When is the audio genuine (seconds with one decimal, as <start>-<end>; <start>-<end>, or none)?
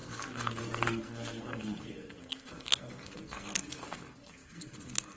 none